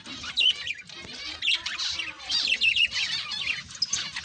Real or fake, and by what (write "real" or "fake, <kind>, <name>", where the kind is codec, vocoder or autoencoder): real